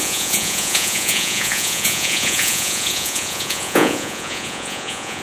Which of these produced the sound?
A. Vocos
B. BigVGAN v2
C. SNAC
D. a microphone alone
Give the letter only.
A